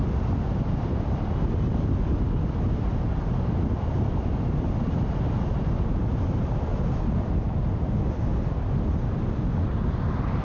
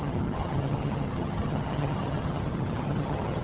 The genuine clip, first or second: first